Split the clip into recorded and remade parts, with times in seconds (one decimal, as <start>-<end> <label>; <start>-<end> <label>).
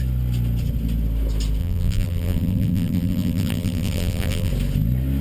0.0-1.6 recorded; 1.6-4.5 remade; 4.5-5.2 recorded